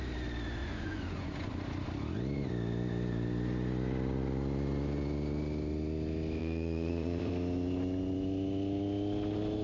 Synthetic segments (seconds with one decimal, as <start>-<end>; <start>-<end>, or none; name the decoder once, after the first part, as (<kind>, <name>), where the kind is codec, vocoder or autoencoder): 0.6-1.5 (vocoder, Vocos); 6.4-7.3